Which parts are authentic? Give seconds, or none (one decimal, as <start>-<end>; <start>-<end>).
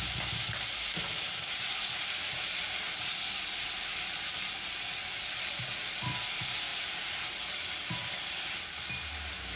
0.0-6.7; 7.6-9.6